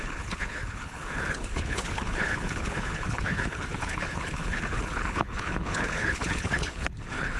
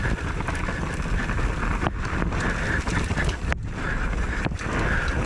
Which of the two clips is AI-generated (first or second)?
first